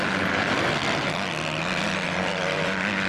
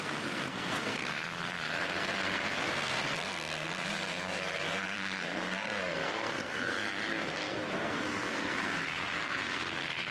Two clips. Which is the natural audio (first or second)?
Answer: first